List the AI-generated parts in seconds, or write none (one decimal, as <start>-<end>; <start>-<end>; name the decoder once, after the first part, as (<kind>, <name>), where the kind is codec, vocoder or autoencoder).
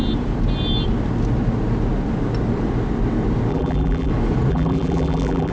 3.5-4.1 (vocoder, BigVGAN v2); 4.5-5.5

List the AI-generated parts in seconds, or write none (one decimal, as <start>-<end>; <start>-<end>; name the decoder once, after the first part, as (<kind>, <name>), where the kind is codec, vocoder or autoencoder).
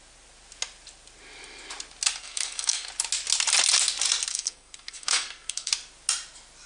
2.2-2.9 (codec, SNAC); 4.3-5.7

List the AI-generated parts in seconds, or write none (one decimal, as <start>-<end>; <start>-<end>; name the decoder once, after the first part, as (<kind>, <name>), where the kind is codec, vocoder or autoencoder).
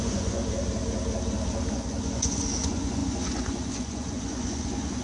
0.0-0.4 (vocoder, Vocos); 1.7-5.0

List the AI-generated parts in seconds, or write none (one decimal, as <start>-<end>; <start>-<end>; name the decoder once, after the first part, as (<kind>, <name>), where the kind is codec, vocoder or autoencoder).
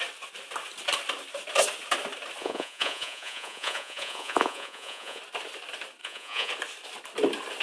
2.4-5.2 (vocoder, Vocos); 6.0-6.5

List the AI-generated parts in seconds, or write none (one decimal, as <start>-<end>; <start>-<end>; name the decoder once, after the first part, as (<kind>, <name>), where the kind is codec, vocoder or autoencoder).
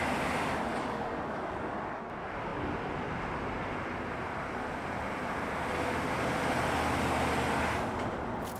0.7-2.0 (codec, DAC)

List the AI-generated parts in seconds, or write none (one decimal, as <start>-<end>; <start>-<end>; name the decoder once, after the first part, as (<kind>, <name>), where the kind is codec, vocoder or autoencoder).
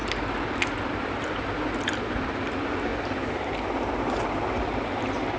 none